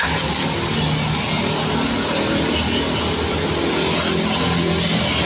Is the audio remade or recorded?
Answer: recorded